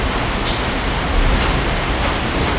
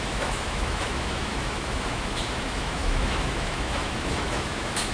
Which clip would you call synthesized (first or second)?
second